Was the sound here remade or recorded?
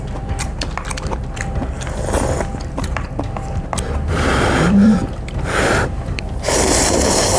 remade